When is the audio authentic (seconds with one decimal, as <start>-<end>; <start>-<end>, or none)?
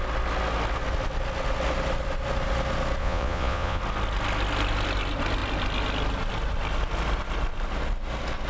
0.0-3.0; 3.8-8.5